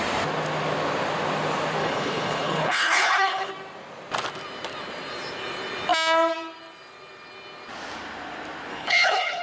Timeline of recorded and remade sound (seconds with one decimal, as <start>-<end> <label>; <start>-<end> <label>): 0.0-1.8 recorded; 1.8-3.5 remade; 3.5-8.7 recorded; 8.7-9.4 remade